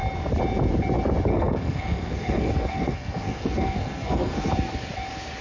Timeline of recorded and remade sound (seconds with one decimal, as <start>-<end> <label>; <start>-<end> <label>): 0.0-1.3 recorded; 1.3-4.5 remade; 4.5-5.4 recorded